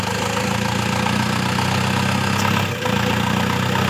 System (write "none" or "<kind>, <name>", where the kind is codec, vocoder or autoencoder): none